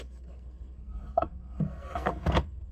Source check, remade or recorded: remade